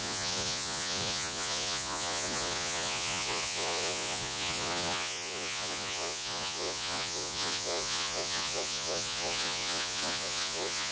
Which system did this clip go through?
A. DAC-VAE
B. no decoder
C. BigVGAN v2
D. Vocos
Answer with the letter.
D